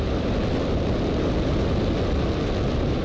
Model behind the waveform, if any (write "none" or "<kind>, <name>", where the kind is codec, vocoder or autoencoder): none